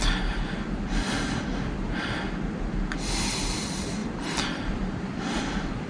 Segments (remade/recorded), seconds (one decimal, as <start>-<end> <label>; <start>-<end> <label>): 0.0-4.0 recorded; 4.0-5.4 remade; 5.4-5.9 recorded